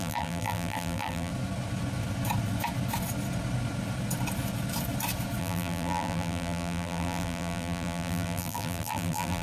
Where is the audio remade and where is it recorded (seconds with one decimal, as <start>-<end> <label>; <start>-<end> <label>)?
0.0-1.3 remade; 1.3-5.4 recorded; 5.4-9.4 remade